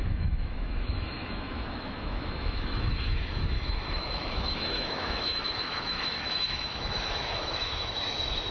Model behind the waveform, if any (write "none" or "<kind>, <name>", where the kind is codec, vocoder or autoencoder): autoencoder, DAC-VAE